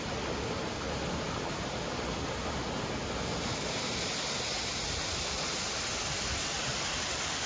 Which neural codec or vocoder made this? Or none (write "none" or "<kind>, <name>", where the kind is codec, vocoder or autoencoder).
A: none